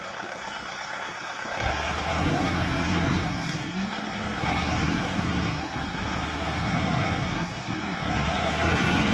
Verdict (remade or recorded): remade